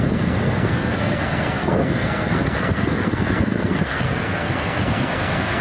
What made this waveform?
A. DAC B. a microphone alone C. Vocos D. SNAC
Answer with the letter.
D